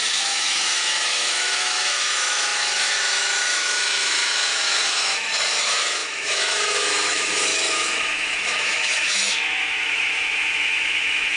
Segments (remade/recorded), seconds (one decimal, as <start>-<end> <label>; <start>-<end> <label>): 0.0-11.4 remade